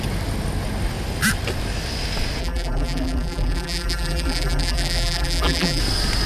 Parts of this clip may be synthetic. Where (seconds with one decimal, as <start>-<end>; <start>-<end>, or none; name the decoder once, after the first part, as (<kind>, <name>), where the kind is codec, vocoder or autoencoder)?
2.4-5.8 (vocoder, BigVGAN v2)